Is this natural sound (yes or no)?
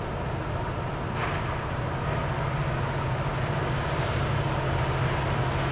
yes